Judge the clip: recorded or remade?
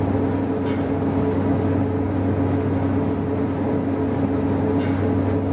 recorded